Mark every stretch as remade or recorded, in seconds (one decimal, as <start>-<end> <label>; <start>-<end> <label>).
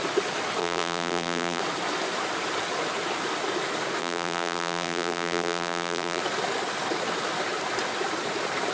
0.0-0.6 recorded; 0.6-1.6 remade; 1.6-4.0 recorded; 4.0-6.2 remade; 6.2-8.7 recorded